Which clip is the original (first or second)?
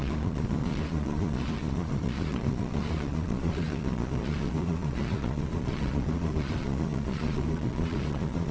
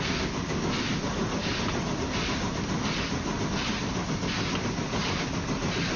second